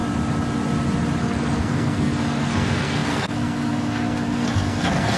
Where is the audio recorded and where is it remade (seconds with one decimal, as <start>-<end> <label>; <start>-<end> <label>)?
0.0-1.2 recorded; 1.2-5.2 remade